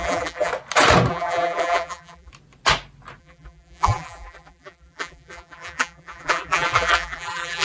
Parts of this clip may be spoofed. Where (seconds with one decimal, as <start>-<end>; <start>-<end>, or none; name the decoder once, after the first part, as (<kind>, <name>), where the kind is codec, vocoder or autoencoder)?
0.0-0.5 (vocoder, BigVGAN v2); 1.1-2.3; 3.2-7.6